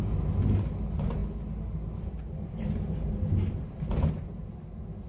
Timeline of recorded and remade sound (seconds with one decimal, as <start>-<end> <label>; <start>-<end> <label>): 0.0-5.1 recorded